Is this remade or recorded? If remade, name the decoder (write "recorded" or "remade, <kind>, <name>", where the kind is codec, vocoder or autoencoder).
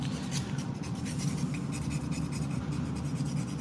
recorded